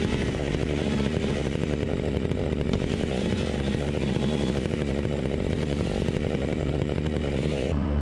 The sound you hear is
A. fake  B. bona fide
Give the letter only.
A